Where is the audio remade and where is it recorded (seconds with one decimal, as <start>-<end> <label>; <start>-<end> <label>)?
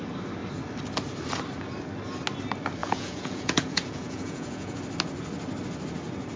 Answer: 0.0-2.8 recorded; 2.8-4.8 remade; 4.8-6.4 recorded